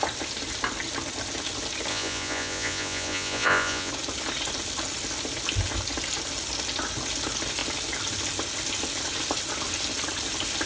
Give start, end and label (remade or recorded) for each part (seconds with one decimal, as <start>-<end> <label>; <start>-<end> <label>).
0.0-1.9 recorded; 1.9-3.9 remade; 3.9-10.7 recorded